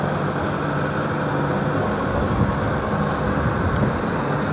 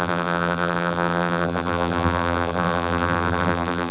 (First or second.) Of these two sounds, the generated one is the second